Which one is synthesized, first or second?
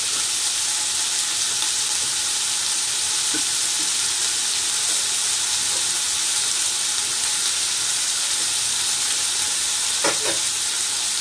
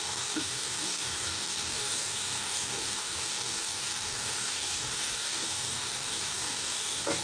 second